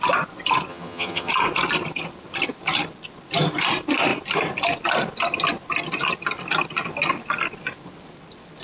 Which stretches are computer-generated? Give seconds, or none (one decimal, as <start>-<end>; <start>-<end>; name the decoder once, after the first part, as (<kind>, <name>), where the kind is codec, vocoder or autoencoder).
0.7-1.3 (vocoder, HiFi-GAN)